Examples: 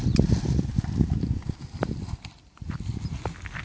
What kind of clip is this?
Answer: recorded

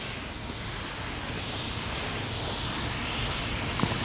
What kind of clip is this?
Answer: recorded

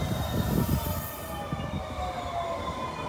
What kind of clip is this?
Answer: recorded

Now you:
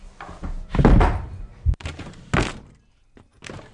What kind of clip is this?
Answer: recorded